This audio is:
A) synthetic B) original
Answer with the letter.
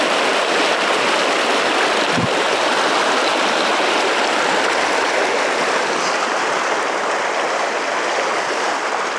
B